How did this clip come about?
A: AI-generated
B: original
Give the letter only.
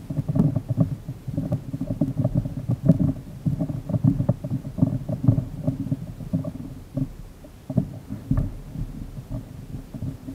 A